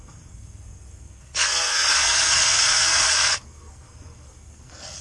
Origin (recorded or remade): remade